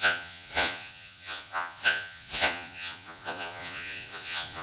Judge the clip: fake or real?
fake